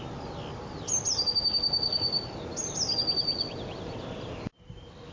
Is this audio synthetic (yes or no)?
no